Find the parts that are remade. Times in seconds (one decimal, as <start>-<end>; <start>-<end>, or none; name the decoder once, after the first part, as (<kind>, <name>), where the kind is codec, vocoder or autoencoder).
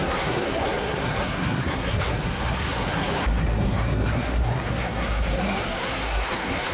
0.0-6.7 (codec, SNAC)